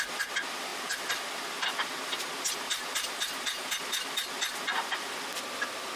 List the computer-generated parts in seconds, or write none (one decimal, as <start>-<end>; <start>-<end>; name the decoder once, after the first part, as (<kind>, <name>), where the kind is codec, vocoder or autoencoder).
none

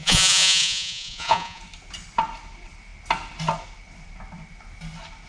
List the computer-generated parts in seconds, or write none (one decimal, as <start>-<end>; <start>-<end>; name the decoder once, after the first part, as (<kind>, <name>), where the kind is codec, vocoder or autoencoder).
0.0-1.6 (vocoder, Vocos)

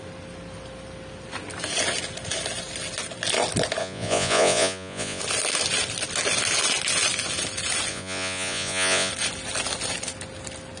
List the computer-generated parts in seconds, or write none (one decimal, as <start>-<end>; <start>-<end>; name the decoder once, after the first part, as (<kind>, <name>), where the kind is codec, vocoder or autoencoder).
3.8-5.2 (vocoder, Vocos); 7.9-9.1